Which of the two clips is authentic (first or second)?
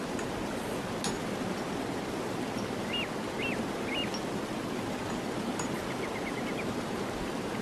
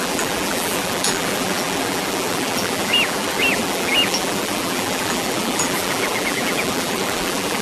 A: first